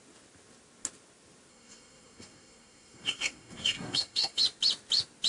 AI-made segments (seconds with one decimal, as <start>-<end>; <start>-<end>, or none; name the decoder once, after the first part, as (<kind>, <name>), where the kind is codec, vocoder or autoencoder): 1.5-4.4 (codec, SNAC)